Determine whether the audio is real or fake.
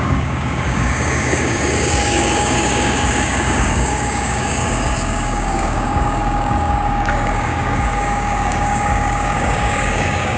fake